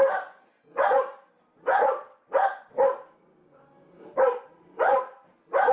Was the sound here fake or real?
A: real